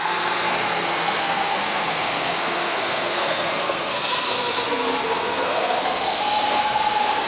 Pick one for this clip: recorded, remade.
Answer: remade